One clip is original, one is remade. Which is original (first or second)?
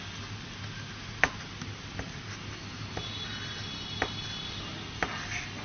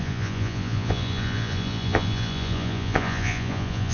first